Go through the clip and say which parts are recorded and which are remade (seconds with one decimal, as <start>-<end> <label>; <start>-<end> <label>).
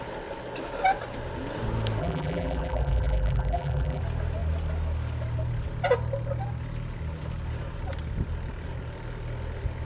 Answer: 0.0-2.0 recorded; 2.0-4.0 remade; 4.0-9.8 recorded